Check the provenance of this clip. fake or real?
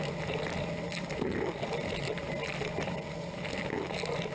real